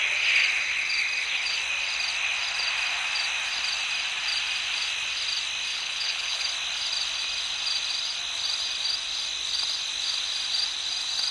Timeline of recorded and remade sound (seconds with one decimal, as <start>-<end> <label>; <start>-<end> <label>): 0.0-5.7 recorded; 5.7-6.5 remade; 6.5-11.3 recorded